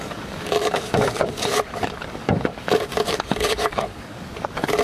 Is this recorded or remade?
remade